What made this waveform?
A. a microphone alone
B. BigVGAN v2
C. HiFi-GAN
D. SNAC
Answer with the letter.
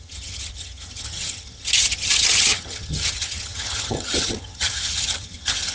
C